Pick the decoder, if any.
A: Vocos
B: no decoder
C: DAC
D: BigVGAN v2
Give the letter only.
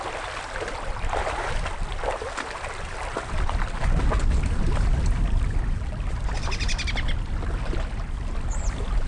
B